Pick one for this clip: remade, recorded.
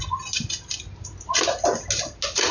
recorded